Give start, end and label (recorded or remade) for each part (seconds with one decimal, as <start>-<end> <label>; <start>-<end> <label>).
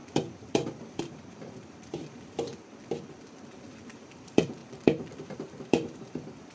0.0-2.5 remade; 2.5-3.1 recorded; 3.1-6.5 remade